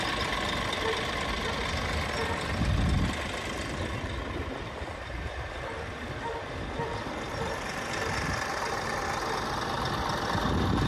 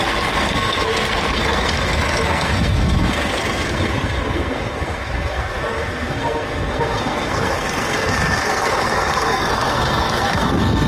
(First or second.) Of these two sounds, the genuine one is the first